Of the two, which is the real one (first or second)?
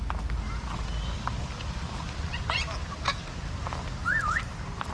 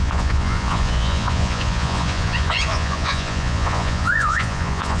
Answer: first